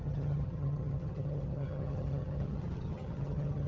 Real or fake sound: fake